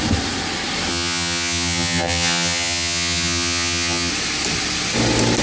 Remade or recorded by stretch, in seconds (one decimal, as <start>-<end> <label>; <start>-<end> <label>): 0.0-0.9 recorded; 0.9-4.1 remade; 4.1-5.4 recorded